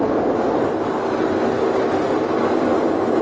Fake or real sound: real